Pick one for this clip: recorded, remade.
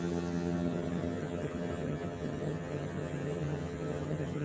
remade